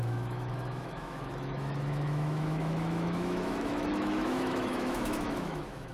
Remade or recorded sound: remade